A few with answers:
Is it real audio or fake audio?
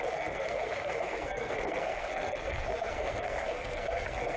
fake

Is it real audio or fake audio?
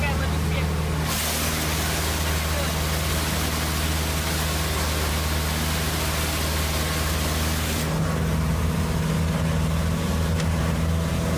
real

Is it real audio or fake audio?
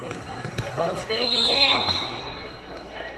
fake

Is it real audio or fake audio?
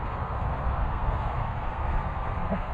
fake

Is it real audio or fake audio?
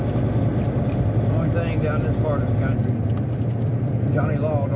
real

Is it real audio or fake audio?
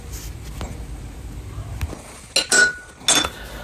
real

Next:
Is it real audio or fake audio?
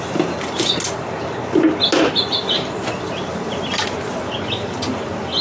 real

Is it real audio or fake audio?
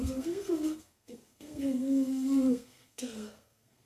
fake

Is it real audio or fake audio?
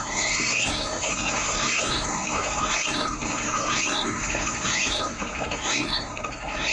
fake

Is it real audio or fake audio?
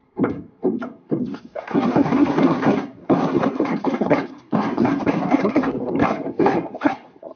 fake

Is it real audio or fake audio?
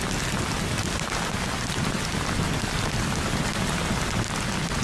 real